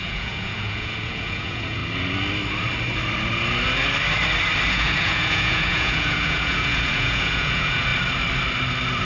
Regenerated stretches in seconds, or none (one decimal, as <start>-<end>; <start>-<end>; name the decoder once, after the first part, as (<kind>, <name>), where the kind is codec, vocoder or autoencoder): 0.0-1.8 (vocoder, Vocos); 4.7-7.9